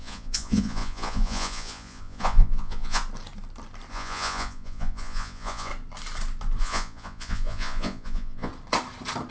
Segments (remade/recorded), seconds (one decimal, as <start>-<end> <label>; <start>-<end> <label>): 0.0-3.0 remade; 3.0-3.9 recorded; 3.9-5.7 remade; 5.7-6.6 recorded; 6.6-8.5 remade; 8.5-9.3 recorded